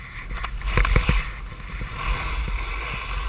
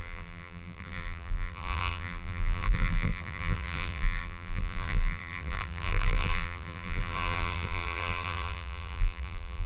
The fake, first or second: second